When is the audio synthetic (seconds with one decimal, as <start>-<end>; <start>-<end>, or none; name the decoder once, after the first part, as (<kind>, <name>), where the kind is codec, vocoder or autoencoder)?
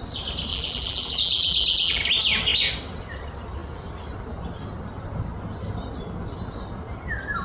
0.5-2.0 (vocoder, BigVGAN v2)